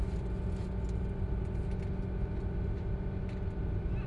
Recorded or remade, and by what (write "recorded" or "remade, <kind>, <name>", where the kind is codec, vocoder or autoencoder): recorded